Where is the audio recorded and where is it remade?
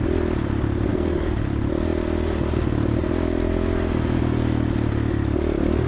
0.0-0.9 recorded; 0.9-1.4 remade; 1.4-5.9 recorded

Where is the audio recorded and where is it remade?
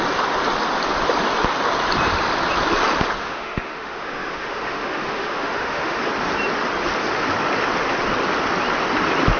0.0-3.2 recorded; 3.2-6.0 remade; 6.0-9.4 recorded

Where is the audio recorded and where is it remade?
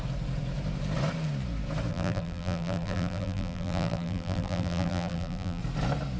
0.0-1.9 recorded; 1.9-5.6 remade; 5.6-6.2 recorded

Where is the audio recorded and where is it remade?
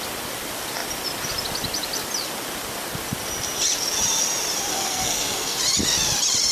0.0-4.7 recorded; 4.7-5.6 remade; 5.6-6.5 recorded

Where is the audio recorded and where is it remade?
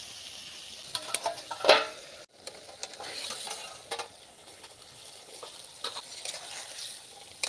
0.0-4.3 recorded; 4.3-5.4 remade; 5.4-7.5 recorded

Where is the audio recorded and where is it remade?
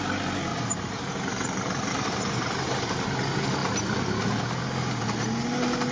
0.0-0.5 recorded; 0.5-3.1 remade; 3.1-5.9 recorded